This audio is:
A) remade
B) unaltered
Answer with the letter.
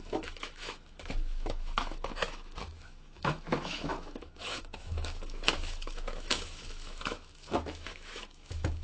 A